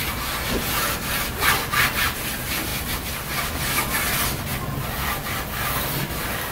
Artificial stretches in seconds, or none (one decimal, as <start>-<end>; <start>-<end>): none